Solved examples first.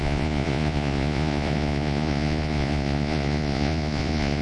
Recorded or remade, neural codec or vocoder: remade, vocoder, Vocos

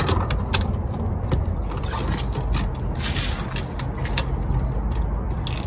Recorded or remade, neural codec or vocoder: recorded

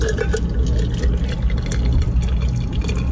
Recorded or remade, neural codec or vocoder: recorded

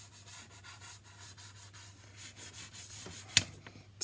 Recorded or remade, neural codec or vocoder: recorded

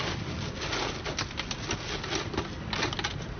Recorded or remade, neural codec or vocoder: recorded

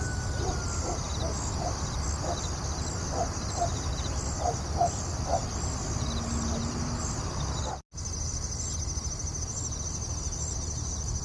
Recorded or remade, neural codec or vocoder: recorded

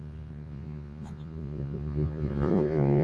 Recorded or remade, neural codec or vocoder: remade, vocoder, Vocos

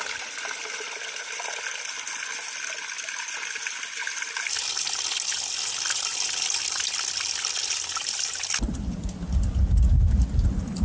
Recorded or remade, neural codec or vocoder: recorded